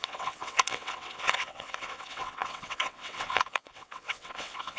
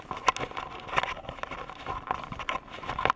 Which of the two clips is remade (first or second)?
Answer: first